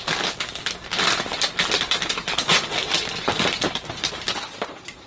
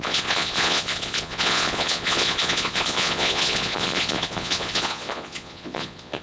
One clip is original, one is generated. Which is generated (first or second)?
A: second